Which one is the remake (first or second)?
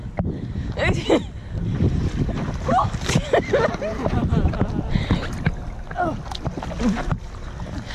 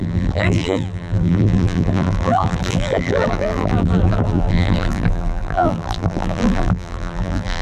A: second